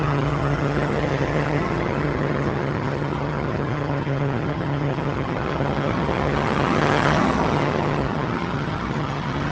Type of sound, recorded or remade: remade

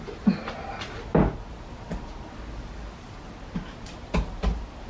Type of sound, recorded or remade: recorded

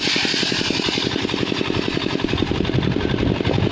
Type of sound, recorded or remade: recorded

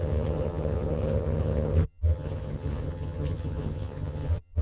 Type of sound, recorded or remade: remade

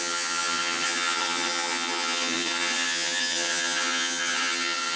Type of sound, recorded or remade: remade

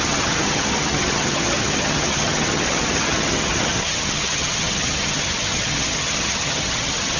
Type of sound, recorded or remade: remade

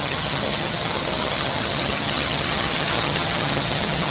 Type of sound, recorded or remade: remade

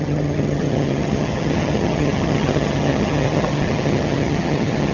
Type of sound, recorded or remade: remade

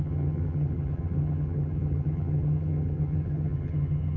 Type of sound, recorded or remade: remade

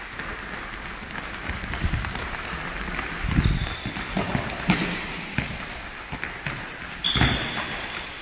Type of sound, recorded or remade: recorded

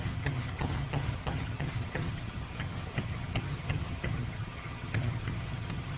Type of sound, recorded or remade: remade